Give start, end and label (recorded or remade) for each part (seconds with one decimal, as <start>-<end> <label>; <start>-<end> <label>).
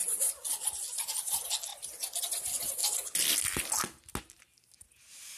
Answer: 0.0-1.1 remade; 1.1-1.7 recorded; 1.7-2.2 remade; 2.2-5.4 recorded